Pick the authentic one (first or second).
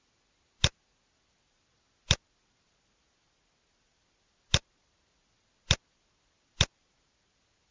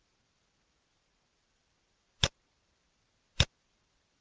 first